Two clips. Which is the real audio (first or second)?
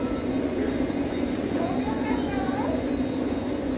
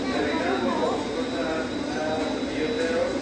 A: second